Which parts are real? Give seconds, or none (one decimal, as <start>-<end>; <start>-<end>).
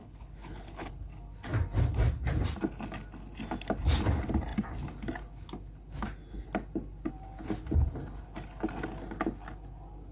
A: 0.9-10.1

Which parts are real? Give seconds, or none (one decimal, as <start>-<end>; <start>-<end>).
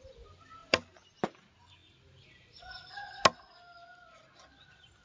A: 0.0-5.0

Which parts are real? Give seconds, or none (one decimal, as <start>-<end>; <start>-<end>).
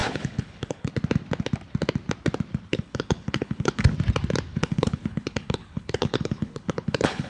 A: 0.9-2.7; 3.9-4.5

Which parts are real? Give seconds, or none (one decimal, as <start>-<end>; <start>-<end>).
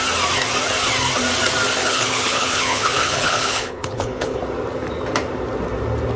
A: 0.0-1.8; 4.4-6.2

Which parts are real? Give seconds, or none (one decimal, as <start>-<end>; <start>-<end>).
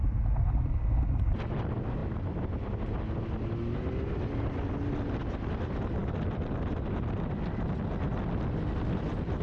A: 0.0-9.4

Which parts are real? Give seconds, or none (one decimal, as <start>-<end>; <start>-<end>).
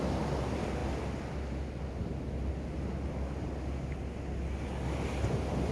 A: 0.0-5.7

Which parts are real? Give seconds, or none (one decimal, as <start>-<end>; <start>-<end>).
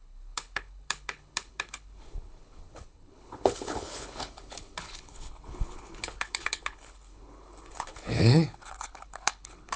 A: none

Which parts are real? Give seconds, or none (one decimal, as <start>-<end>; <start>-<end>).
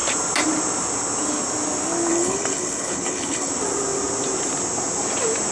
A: 0.0-2.1; 3.5-5.5